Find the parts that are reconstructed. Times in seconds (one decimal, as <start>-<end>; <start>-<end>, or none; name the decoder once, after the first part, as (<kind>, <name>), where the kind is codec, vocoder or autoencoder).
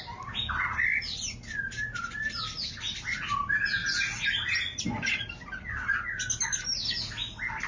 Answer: none